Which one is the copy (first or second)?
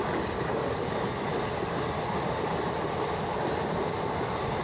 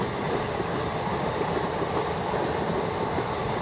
second